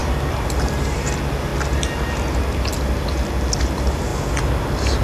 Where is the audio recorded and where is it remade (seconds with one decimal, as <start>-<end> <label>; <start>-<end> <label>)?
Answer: 0.0-1.5 remade; 1.5-3.6 recorded; 3.6-4.1 remade; 4.1-4.6 recorded; 4.6-5.0 remade